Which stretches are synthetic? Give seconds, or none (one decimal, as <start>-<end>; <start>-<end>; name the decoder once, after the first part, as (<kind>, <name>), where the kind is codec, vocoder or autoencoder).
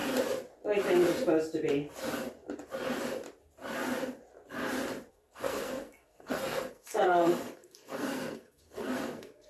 5.1-9.5 (codec, SNAC)